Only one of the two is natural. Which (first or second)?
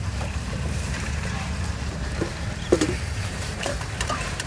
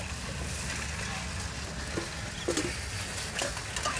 second